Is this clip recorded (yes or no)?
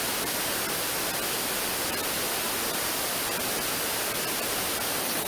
yes